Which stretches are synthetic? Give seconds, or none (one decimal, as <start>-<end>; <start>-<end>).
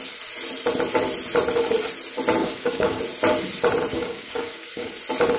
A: 2.4-3.0; 3.9-4.9